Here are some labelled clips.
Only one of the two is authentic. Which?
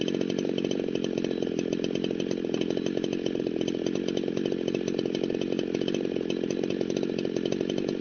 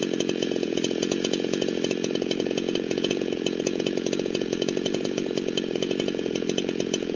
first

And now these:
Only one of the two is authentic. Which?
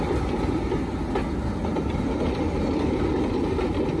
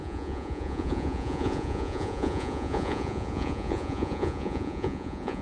first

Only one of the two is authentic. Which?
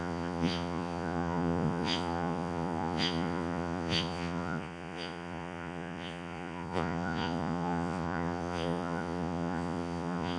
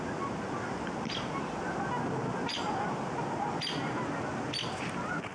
second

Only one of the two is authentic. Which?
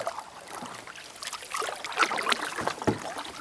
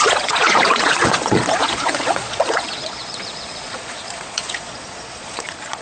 first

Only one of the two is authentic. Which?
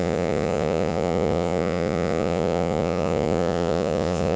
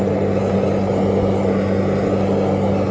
second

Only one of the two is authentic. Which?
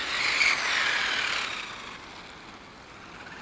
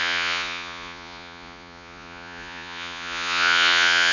first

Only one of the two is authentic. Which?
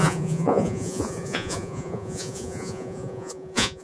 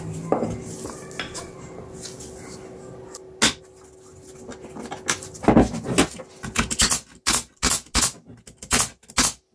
second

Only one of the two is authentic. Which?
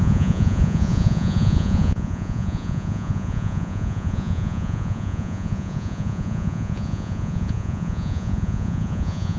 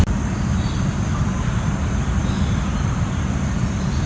second